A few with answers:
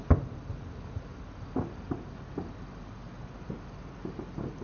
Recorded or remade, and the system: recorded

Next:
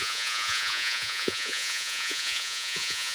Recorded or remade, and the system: remade, vocoder, Vocos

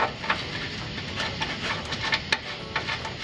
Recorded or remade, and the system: recorded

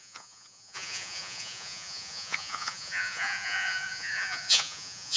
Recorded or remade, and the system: remade, vocoder, Vocos